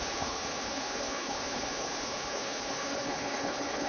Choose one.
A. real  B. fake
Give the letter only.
B